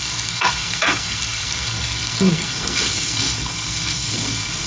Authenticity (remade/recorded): remade